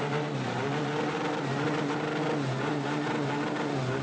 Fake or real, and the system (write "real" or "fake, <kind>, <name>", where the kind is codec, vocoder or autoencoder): real